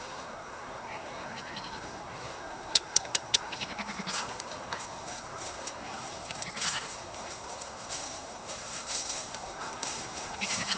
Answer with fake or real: fake